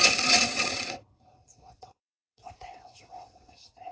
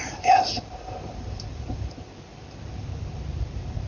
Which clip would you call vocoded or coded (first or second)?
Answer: first